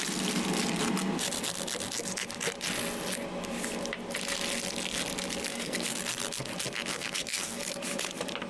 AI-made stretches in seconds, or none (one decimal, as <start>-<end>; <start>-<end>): 5.5-6.0; 6.9-7.6

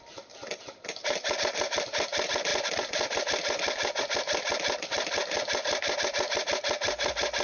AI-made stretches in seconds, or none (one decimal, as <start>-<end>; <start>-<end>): none

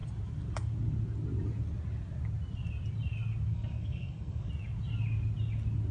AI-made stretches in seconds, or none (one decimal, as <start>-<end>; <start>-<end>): 3.5-4.5

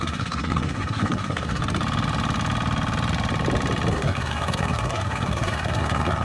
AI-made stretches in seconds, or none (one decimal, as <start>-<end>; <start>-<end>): 0.0-1.6; 3.9-6.2

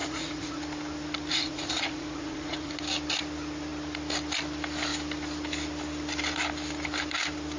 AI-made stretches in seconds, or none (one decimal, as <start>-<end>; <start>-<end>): 0.0-0.6; 1.3-2.7